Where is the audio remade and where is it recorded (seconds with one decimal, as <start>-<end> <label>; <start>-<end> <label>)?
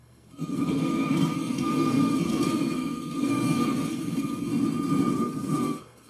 0.0-4.5 remade; 4.5-5.1 recorded; 5.1-6.1 remade